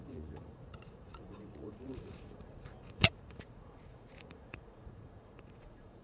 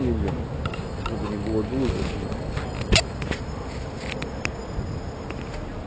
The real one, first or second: second